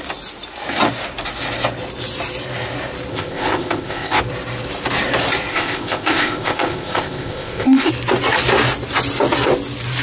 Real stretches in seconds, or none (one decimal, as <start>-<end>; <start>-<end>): 0.0-3.1; 4.2-5.5; 7.9-10.0